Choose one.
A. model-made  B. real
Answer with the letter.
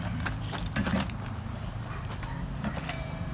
A